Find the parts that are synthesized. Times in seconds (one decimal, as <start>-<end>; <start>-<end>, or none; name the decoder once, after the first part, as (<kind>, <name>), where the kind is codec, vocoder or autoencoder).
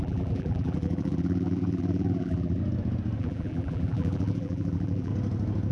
0.0-2.6 (vocoder, BigVGAN v2); 3.2-5.1